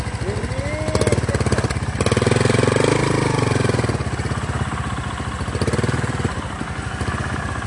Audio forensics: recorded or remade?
recorded